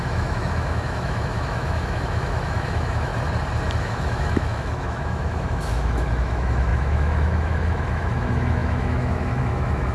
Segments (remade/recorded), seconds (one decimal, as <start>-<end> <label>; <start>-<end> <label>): 0.0-3.1 remade; 3.1-3.8 recorded; 3.8-9.9 remade